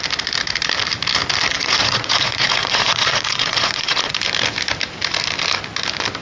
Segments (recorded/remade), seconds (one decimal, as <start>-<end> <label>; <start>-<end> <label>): 0.0-1.5 recorded; 1.5-4.1 remade; 4.1-6.2 recorded